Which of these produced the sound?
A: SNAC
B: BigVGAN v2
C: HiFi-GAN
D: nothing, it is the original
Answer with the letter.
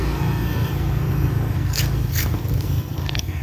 A